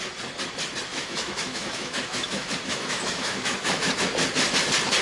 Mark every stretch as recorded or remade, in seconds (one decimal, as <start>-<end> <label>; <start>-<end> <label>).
0.0-0.9 recorded; 0.9-3.9 remade; 3.9-5.0 recorded

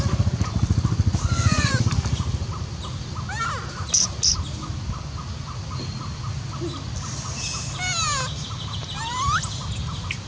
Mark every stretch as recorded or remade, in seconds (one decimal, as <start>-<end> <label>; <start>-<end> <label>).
0.0-1.2 recorded; 1.2-1.7 remade; 1.7-10.3 recorded

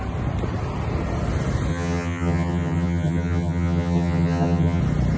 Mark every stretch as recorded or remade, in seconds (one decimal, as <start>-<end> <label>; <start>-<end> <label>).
0.0-1.7 recorded; 1.7-4.8 remade; 4.8-5.2 recorded

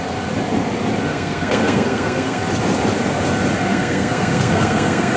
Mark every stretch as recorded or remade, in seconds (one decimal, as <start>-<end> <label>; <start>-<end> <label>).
0.0-1.1 recorded; 1.1-2.4 remade; 2.4-3.7 recorded; 3.7-5.2 remade